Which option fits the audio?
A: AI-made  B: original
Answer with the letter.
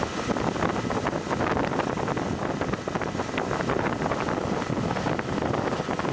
B